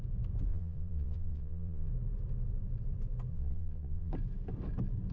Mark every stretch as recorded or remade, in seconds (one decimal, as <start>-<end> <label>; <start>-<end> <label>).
0.0-0.5 recorded; 0.5-1.9 remade; 1.9-3.3 recorded; 3.3-4.1 remade; 4.1-5.1 recorded